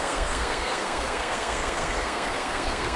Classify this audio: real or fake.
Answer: fake